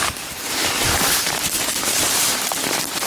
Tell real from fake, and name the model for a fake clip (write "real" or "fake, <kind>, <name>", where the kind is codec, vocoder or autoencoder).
fake, vocoder, BigVGAN v2